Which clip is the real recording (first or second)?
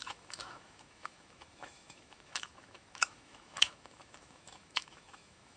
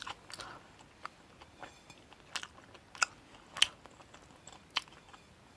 second